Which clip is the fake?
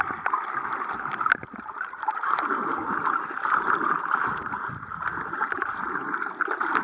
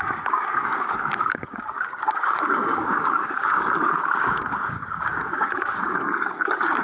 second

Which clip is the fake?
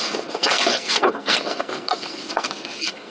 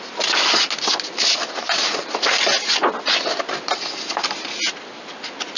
first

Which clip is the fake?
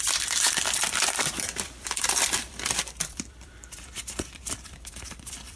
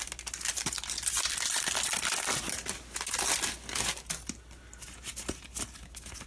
first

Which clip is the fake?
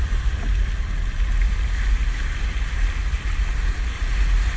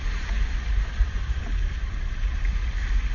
second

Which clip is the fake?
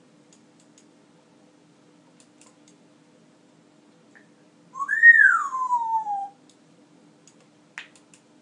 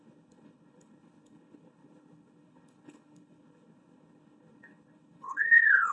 second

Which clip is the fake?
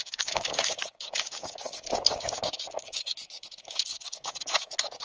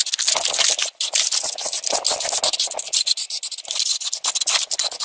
first